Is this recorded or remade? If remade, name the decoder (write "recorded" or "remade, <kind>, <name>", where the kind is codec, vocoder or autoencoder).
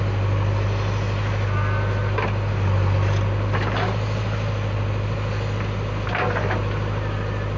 recorded